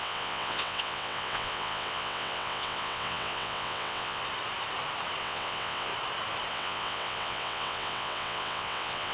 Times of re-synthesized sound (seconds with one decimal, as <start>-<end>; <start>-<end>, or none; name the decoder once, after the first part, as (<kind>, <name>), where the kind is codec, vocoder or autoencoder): 0.0-4.2 (vocoder, WaveNeXt); 5.2-5.9; 6.5-9.1